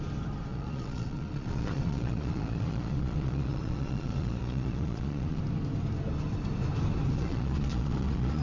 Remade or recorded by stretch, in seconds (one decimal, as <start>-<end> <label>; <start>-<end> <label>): 0.0-0.5 recorded; 0.5-5.4 remade; 5.4-7.1 recorded; 7.1-8.4 remade